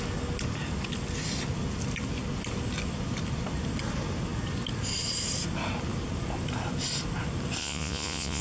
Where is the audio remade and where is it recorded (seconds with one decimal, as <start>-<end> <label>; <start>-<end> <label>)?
0.0-7.6 recorded; 7.6-8.4 remade